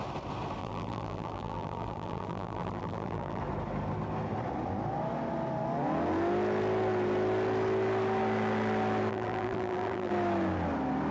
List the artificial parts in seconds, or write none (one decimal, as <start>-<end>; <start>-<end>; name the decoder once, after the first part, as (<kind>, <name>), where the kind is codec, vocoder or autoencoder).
0.6-3.4 (vocoder, BigVGAN v2); 9.1-10.1